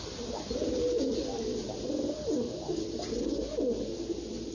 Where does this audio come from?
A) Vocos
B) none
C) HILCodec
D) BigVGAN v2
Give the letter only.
B